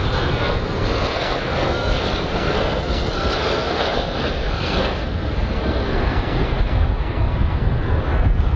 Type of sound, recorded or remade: remade